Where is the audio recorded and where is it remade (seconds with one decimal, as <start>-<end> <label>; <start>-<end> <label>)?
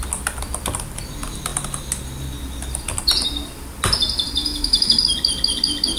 0.0-4.4 recorded; 4.4-5.0 remade; 5.0-6.0 recorded